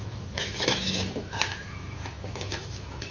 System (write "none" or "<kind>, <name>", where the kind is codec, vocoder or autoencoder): autoencoder, DAC-VAE